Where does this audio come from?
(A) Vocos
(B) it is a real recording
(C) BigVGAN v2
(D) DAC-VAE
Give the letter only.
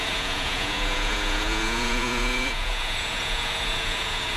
A